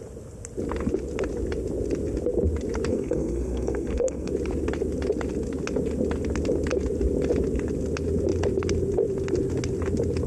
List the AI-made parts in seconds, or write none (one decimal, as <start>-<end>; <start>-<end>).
2.9-4.3